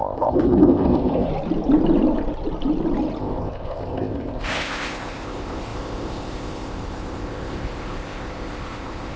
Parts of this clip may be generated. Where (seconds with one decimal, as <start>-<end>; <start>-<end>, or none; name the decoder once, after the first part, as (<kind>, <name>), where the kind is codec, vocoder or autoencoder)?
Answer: 0.0-1.3 (codec, ZipCodec); 3.2-9.2